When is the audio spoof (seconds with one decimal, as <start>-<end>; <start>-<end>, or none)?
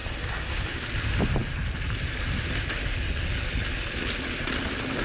none